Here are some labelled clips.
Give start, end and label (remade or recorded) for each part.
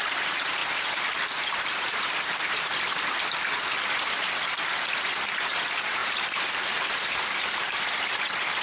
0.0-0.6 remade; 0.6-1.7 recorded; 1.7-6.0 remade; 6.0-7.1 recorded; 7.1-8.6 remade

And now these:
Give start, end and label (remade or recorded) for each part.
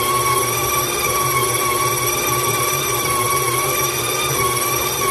0.0-1.4 remade; 1.4-2.6 recorded; 2.6-5.1 remade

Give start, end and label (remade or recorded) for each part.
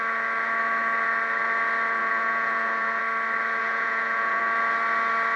0.0-2.0 recorded; 2.0-3.0 remade; 3.0-3.6 recorded; 3.6-4.4 remade; 4.4-5.4 recorded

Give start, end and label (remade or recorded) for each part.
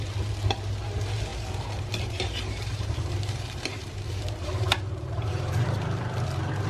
0.0-1.3 recorded; 1.3-5.3 remade; 5.3-6.7 recorded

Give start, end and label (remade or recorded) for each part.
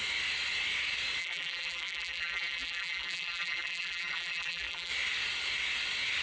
0.0-1.2 recorded; 1.2-4.9 remade; 4.9-6.2 recorded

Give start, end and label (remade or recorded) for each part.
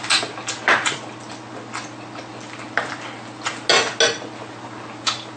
0.0-5.4 recorded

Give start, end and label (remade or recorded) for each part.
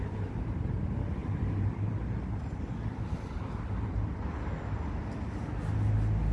0.0-6.3 recorded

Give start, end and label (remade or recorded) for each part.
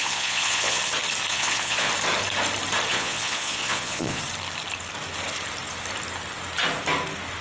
0.0-0.8 remade; 0.8-1.3 recorded; 1.3-1.9 remade; 1.9-2.9 recorded; 2.9-4.2 remade; 4.2-7.4 recorded